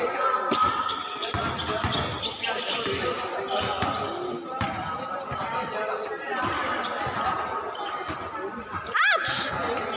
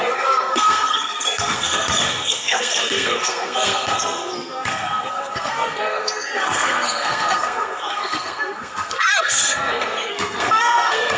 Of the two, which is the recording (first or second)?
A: first